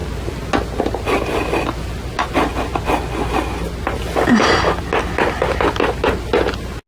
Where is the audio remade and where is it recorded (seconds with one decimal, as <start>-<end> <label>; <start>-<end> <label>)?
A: 0.0-6.9 recorded